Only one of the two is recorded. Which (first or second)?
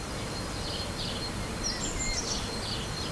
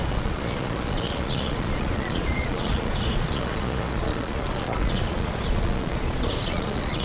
first